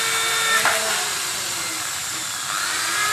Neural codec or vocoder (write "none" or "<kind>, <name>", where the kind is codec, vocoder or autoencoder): none